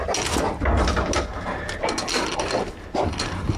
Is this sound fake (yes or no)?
no